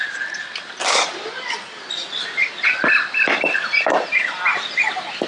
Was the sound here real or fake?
real